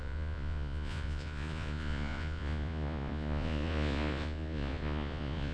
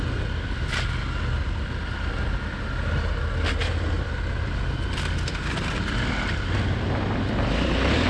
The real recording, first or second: second